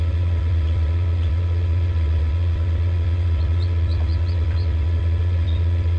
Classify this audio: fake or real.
fake